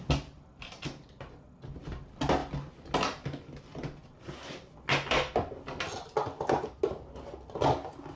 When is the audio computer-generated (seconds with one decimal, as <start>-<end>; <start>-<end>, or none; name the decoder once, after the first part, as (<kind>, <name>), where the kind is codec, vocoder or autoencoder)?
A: none